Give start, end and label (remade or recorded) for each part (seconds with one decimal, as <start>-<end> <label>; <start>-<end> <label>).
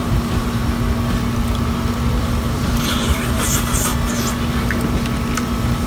0.0-0.6 remade; 0.6-2.2 recorded; 2.2-3.9 remade; 3.9-5.9 recorded